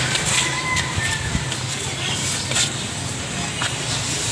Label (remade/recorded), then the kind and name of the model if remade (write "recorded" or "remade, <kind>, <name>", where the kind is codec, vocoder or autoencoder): recorded